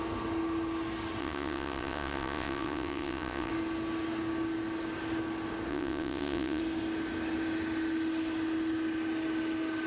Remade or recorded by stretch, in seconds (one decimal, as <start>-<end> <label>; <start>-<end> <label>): 0.0-1.2 recorded; 1.2-3.5 remade; 3.5-5.7 recorded; 5.7-6.6 remade; 6.6-9.9 recorded